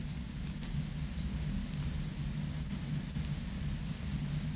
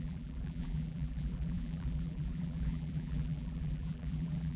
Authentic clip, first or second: first